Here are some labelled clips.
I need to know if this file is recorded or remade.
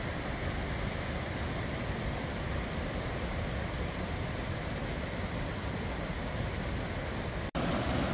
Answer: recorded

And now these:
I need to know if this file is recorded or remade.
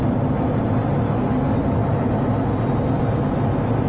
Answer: recorded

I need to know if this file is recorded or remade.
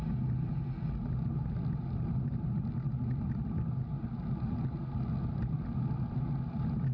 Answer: recorded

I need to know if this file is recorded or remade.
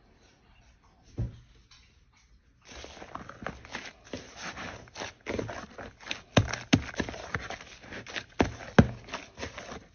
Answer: recorded